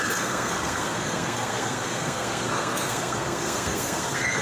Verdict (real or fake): fake